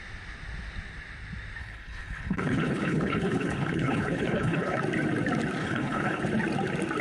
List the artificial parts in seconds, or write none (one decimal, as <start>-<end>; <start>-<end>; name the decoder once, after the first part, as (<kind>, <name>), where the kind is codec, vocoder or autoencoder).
1.6-4.8 (codec, HILCodec); 5.6-6.2